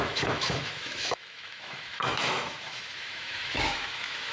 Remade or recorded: remade